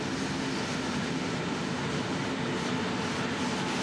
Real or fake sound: real